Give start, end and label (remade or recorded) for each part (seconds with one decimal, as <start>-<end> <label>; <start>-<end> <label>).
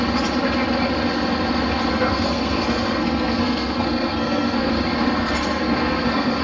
0.0-1.9 recorded; 1.9-4.7 remade; 4.7-5.2 recorded; 5.2-6.4 remade